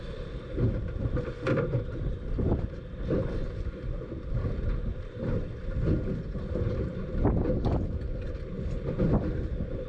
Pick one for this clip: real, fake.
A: real